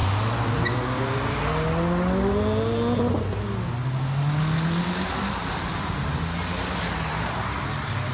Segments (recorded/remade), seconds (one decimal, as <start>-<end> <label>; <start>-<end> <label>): 0.0-8.1 recorded